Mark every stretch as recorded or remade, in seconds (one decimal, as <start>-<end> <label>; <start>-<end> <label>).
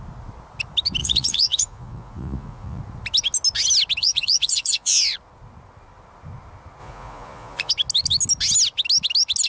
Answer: 0.0-1.0 recorded; 1.0-2.8 remade; 2.8-4.0 recorded; 4.0-5.0 remade; 5.0-6.8 recorded; 6.8-7.7 remade; 7.7-9.5 recorded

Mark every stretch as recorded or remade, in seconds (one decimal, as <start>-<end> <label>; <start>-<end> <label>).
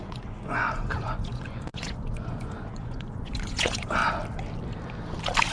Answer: 0.0-4.0 remade; 4.0-5.5 recorded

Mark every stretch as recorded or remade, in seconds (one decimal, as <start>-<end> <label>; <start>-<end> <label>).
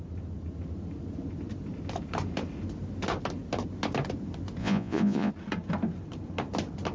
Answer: 0.0-4.6 recorded; 4.6-5.3 remade; 5.3-6.9 recorded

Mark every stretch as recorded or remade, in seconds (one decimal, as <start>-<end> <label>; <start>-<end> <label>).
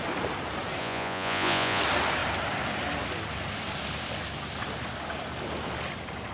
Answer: 0.0-0.8 recorded; 0.8-1.8 remade; 1.8-6.3 recorded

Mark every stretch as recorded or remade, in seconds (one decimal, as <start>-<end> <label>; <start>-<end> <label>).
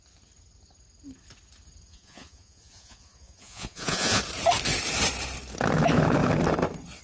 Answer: 0.0-1.9 recorded; 1.9-4.2 remade; 4.2-7.0 recorded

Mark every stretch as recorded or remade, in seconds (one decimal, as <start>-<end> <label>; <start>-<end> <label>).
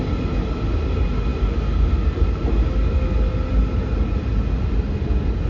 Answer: 0.0-5.5 recorded